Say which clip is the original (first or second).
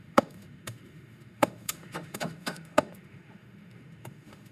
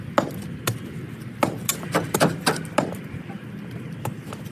second